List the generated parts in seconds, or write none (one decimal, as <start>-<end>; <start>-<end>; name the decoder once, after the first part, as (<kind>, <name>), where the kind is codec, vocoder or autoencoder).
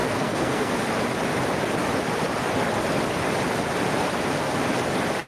0.0-0.7 (codec, SNAC)